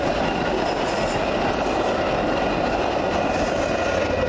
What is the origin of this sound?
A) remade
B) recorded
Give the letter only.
B